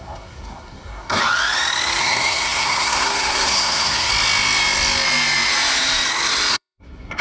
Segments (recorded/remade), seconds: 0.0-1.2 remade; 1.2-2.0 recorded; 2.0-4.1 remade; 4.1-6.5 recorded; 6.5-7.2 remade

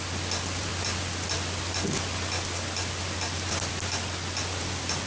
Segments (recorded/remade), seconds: 0.0-5.1 recorded

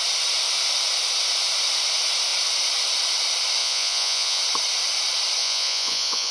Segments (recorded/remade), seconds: 0.0-3.6 recorded; 3.6-4.4 remade; 4.4-5.4 recorded; 5.4-6.3 remade

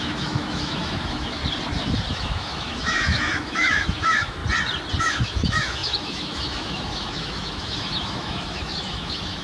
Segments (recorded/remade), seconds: 0.0-1.4 remade; 1.4-2.1 recorded; 2.1-4.4 remade; 4.4-5.0 recorded; 5.0-9.4 remade

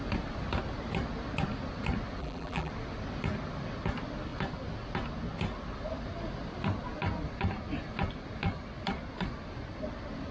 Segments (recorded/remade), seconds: 0.0-2.2 recorded; 2.2-2.7 remade; 2.7-10.3 recorded

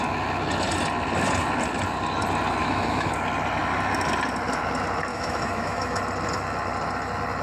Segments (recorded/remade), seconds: 0.0-2.6 recorded; 2.6-3.1 remade; 3.1-5.1 recorded; 5.1-6.0 remade; 6.0-7.4 recorded

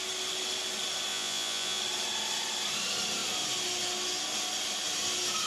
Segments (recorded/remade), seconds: 0.0-1.1 recorded; 1.1-1.8 remade; 1.8-5.5 recorded

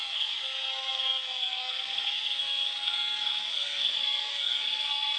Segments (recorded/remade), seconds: 0.0-5.2 remade